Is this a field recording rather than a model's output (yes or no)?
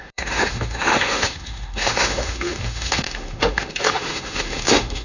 no